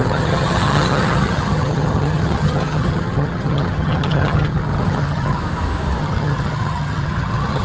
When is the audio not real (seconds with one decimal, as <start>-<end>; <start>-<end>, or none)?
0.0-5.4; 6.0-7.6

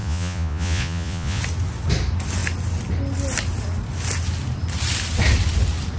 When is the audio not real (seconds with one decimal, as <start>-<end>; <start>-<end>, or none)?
0.0-1.4

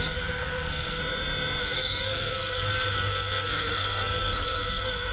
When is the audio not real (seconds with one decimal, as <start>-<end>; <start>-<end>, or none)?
0.0-1.0; 1.6-5.1

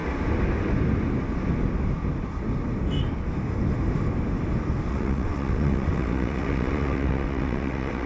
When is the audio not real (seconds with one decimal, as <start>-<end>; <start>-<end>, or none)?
4.9-8.1

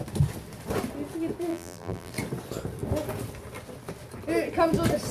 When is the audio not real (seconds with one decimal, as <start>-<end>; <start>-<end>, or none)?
1.5-2.1

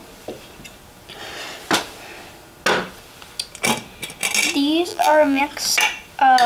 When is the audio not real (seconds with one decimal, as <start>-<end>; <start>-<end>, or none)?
4.9-5.4

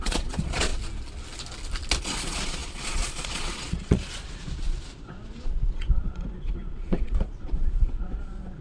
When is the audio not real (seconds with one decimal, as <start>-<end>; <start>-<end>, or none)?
0.0-0.7; 2.0-8.6